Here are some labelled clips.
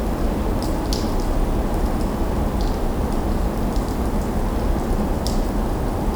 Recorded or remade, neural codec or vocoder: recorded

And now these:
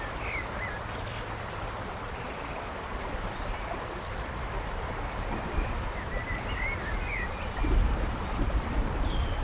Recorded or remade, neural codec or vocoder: remade, vocoder, BigVGAN v2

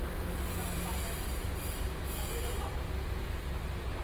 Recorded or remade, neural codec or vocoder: recorded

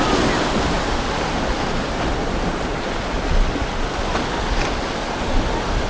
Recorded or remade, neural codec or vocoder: recorded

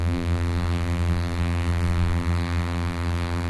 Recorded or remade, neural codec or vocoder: remade, vocoder, BigVGAN v2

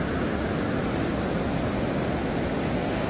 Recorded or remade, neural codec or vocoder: recorded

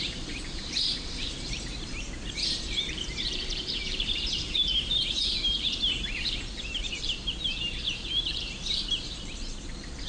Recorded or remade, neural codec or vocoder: remade, vocoder, BigVGAN v2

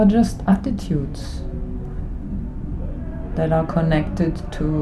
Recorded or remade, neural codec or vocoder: recorded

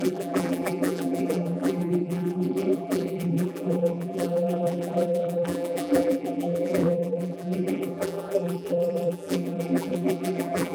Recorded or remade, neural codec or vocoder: remade, vocoder, BigVGAN v2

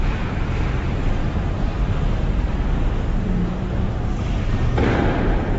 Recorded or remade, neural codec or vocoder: remade, vocoder, BigVGAN v2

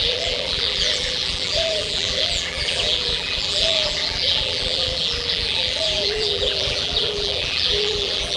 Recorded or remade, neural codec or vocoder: remade, vocoder, BigVGAN v2